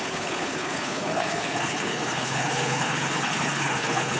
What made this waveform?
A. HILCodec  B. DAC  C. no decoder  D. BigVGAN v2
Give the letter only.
A